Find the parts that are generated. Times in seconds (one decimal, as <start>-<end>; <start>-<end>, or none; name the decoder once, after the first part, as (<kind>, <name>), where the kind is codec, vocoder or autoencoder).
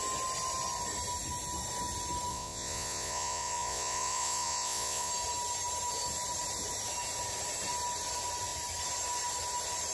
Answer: 2.3-5.1 (vocoder, Vocos)